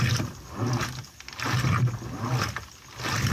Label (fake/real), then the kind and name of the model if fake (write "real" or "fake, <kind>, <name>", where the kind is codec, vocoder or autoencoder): real